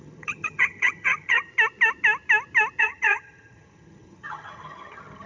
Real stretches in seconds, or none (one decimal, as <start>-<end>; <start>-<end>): 1.5-2.8